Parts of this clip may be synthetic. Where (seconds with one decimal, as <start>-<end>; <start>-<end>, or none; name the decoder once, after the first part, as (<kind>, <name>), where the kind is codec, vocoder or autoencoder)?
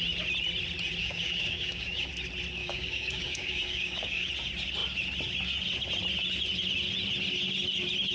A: 1.0-2.1 (codec, DAC); 2.6-4.3